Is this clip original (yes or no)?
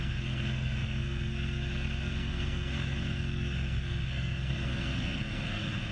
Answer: no